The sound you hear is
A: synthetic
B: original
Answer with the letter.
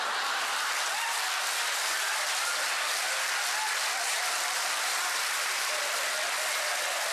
B